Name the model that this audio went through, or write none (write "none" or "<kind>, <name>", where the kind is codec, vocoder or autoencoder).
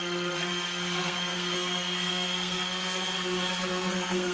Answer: codec, SNAC